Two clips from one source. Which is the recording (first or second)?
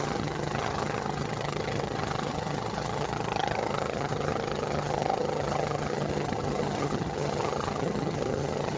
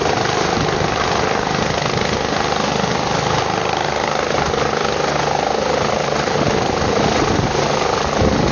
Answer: second